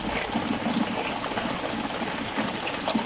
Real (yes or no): yes